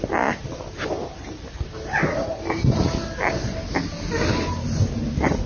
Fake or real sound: real